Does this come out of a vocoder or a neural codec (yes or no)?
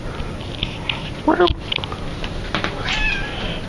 no